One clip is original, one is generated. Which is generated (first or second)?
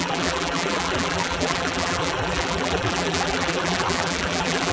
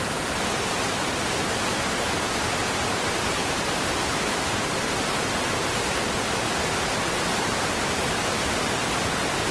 first